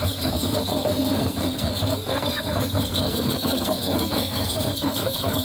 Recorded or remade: remade